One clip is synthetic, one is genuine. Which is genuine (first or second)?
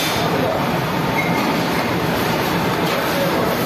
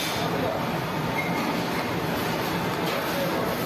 second